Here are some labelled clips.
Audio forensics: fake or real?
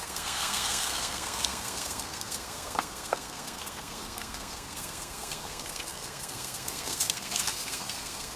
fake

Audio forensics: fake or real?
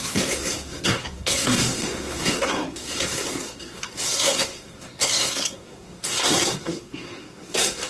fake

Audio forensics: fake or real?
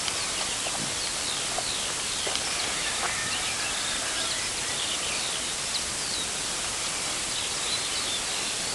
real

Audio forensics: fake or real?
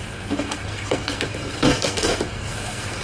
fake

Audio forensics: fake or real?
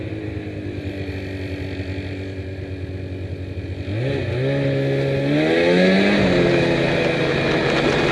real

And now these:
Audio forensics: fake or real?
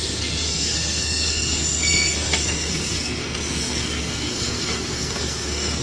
fake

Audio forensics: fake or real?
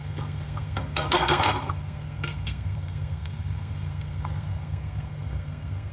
fake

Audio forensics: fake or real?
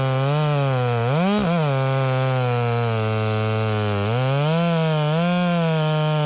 real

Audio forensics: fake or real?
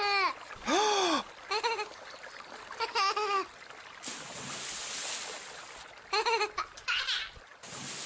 real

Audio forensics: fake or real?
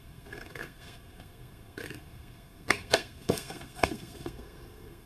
fake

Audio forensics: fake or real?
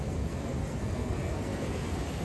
fake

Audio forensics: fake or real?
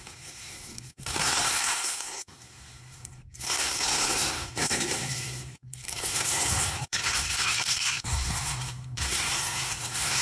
fake